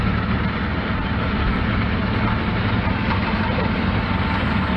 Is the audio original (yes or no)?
yes